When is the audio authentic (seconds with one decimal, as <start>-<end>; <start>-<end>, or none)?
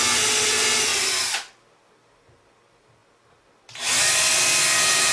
0.0-5.1